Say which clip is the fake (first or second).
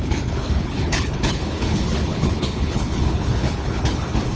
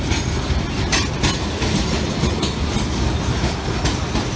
first